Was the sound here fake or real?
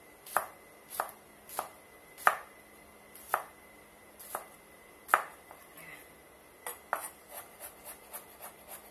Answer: real